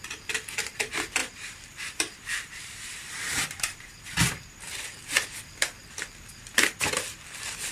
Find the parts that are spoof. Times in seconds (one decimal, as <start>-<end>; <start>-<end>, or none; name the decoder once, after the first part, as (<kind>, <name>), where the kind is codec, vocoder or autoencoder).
1.2-4.0 (vocoder, BigVGAN v2)